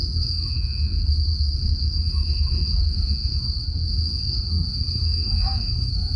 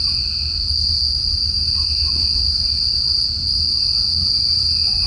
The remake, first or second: first